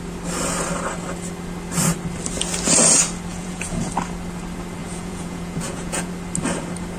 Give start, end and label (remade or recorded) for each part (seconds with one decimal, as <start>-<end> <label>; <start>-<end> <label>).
0.0-3.3 recorded; 3.3-3.9 remade; 3.9-4.8 recorded; 4.8-6.1 remade; 6.1-7.0 recorded